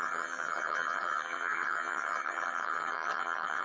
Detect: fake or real fake